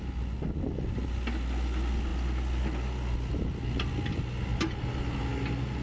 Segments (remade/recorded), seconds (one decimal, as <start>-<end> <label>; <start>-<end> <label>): 0.0-5.8 recorded